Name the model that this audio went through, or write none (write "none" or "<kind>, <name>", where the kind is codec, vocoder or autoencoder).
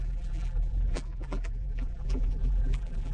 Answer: vocoder, BigVGAN v2